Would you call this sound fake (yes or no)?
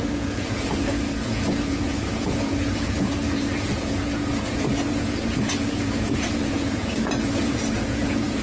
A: yes